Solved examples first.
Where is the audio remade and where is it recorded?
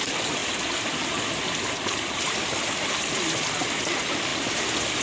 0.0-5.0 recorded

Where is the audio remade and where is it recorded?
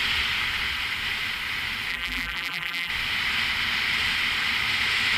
0.0-1.9 recorded; 1.9-2.9 remade; 2.9-5.2 recorded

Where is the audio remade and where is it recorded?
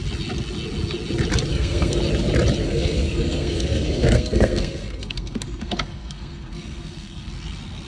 0.0-1.5 recorded; 1.5-2.0 remade; 2.0-2.6 recorded; 2.6-7.3 remade; 7.3-7.9 recorded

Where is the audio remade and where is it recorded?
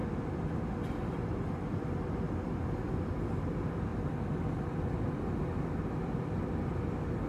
0.0-7.3 recorded